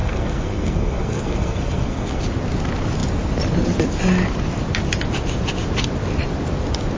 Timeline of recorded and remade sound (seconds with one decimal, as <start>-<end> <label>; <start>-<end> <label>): 0.0-2.2 remade; 2.2-7.0 recorded